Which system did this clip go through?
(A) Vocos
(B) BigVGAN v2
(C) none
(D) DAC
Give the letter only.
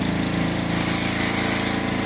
C